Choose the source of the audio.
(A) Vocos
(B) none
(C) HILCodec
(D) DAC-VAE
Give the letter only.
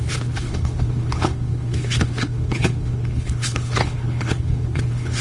C